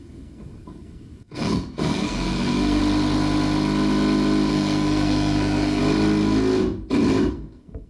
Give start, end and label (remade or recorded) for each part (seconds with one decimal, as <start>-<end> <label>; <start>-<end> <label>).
0.0-2.8 remade; 2.8-4.5 recorded; 4.5-5.8 remade; 5.8-7.3 recorded; 7.3-7.9 remade